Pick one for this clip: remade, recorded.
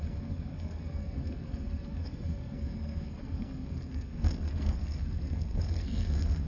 remade